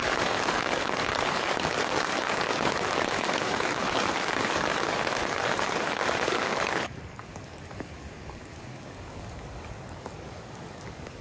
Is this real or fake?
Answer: fake